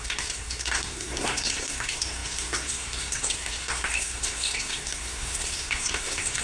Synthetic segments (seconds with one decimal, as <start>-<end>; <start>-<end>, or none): 0.0-6.4

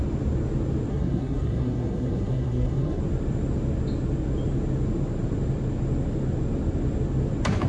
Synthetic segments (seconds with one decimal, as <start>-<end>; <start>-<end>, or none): 0.9-3.0

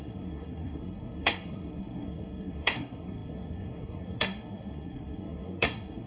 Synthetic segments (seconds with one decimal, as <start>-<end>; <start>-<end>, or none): 0.0-6.1

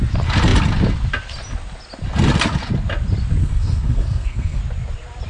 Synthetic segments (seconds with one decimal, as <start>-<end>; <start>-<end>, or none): 3.4-4.6

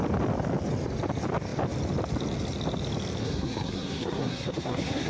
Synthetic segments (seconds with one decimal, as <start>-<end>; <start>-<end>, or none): 3.2-5.1

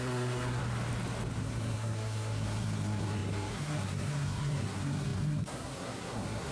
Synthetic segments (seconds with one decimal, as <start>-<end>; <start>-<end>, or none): 0.0-0.6; 1.4-6.5